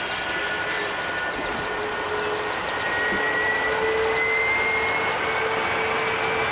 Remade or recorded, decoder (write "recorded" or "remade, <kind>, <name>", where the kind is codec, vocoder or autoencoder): recorded